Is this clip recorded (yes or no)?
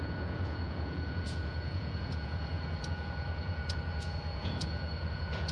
no